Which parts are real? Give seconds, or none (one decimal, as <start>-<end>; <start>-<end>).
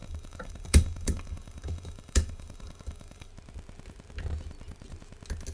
3.3-5.5